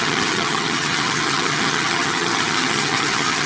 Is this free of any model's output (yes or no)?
no